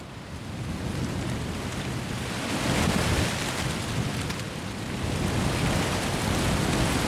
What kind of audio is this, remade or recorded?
recorded